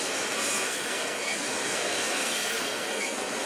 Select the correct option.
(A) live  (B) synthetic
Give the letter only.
B